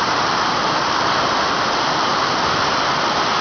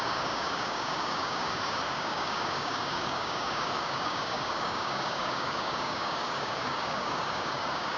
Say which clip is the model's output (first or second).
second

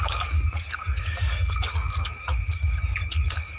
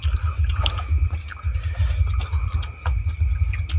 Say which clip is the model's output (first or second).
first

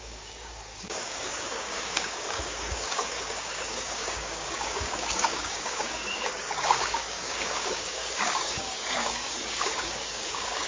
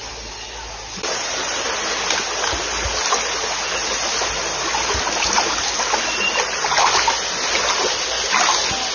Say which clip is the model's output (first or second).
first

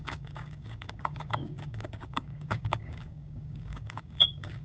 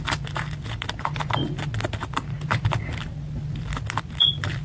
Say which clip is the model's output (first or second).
first